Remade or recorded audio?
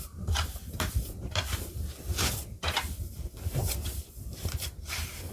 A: remade